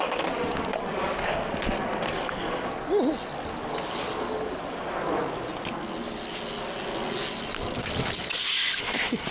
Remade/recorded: recorded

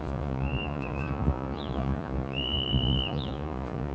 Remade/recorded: remade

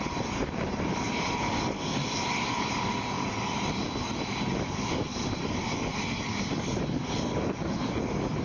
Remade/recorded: recorded